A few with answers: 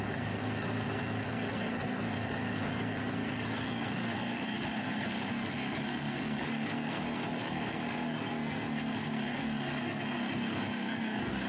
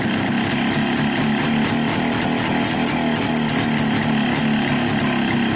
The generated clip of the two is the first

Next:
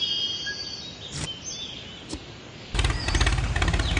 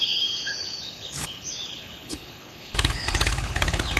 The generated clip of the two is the second